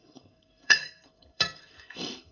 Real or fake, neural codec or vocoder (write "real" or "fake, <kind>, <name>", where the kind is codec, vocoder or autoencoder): fake, codec, SNAC